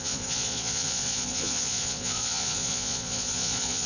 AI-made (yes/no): yes